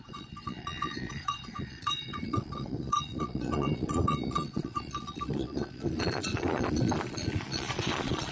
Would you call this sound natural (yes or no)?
no